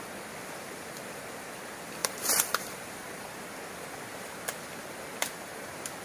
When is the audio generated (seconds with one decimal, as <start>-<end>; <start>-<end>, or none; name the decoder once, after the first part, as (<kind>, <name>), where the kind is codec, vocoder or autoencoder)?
2.0-3.2 (vocoder, BigVGAN v2)